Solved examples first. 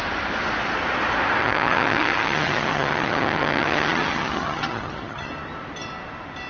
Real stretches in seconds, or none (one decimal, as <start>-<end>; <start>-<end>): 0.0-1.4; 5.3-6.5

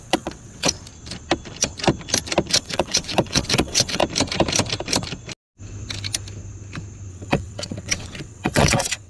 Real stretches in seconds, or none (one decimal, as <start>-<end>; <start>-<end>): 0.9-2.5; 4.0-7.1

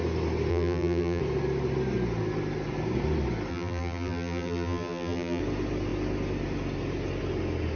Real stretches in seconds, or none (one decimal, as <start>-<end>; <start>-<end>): 0.0-0.5; 1.2-3.5; 5.4-7.8